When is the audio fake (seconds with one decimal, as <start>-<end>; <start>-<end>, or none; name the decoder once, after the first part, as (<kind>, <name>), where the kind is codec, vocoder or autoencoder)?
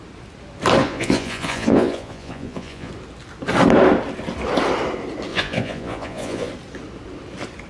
0.8-2.9 (vocoder, Vocos); 5.3-6.5